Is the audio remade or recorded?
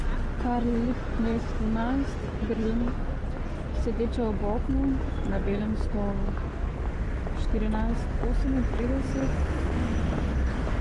recorded